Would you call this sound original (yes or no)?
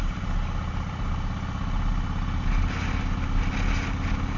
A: yes